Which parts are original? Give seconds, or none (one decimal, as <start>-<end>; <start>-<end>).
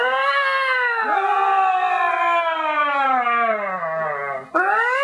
0.0-5.0